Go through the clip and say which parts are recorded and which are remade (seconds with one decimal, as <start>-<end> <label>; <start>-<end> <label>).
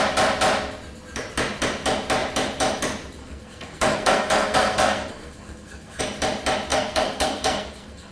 0.0-3.2 recorded; 3.2-6.0 remade; 6.0-6.7 recorded; 6.7-8.1 remade